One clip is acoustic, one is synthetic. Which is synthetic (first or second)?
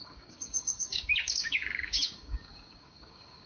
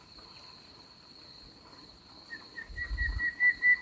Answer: first